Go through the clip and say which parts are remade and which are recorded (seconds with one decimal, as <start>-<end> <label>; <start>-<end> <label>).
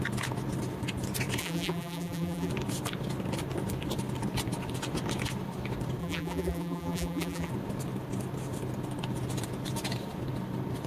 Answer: 0.0-1.4 recorded; 1.4-2.5 remade; 2.5-6.0 recorded; 6.0-7.5 remade; 7.5-10.9 recorded